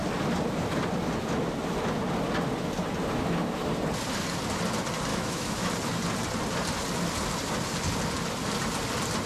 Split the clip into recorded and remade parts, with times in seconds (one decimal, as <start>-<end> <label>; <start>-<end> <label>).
0.0-5.1 recorded; 5.1-5.7 remade; 5.7-9.3 recorded